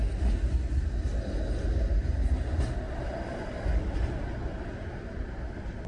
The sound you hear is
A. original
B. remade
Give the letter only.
A